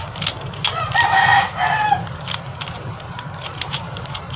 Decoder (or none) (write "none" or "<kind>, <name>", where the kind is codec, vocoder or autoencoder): vocoder, BigVGAN v2